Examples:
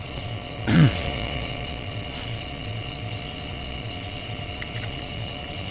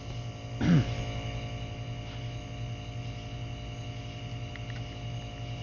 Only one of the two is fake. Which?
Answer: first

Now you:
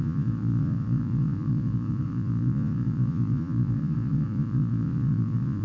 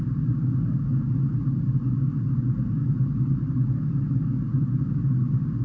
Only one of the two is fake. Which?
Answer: first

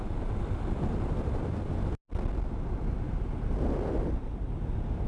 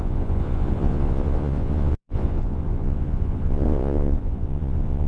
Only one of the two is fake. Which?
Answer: second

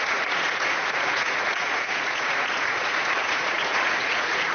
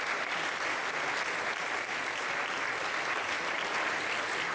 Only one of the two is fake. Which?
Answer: first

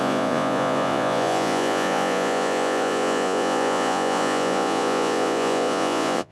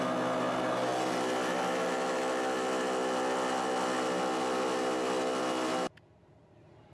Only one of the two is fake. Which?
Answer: first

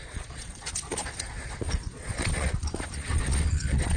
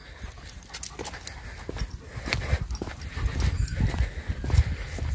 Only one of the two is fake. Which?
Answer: first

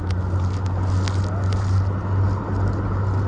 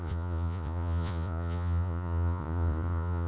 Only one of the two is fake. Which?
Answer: second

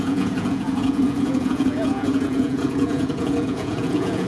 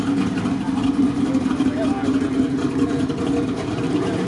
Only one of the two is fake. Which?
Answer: first